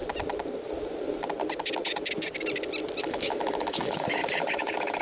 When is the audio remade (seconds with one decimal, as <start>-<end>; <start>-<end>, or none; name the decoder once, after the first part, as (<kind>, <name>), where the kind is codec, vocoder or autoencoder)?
3.0-5.0 (autoencoder, DAC-VAE)